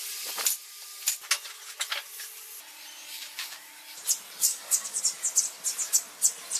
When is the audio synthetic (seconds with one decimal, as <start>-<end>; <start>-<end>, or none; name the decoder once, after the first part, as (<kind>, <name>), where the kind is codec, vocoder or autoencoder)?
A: 3.0-3.8 (codec, DAC); 4.4-5.0